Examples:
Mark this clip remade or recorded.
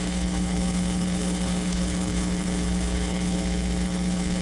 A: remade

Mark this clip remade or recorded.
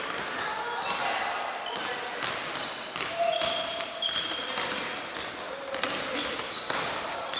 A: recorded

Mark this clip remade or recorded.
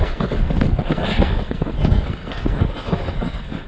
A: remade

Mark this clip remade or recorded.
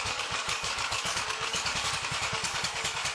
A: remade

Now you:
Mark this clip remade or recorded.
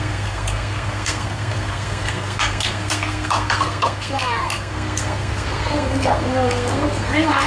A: remade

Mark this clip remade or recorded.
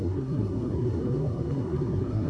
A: remade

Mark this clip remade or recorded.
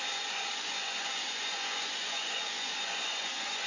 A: remade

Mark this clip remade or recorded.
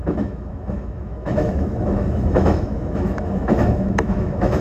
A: remade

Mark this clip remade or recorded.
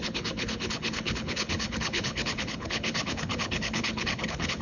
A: remade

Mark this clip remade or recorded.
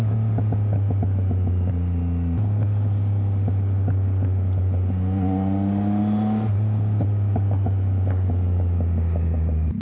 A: recorded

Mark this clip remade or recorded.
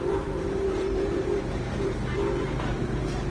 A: remade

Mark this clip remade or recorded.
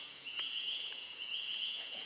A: remade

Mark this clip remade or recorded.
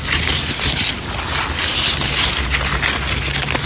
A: recorded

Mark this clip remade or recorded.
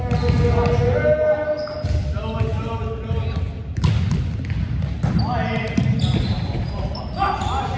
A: recorded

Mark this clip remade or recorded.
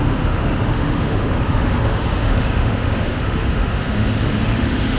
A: remade